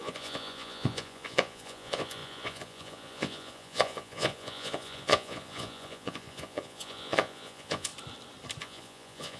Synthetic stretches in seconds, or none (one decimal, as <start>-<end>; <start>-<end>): 0.0-7.9; 8.6-9.4